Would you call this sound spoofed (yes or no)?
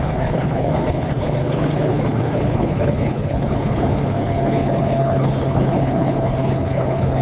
yes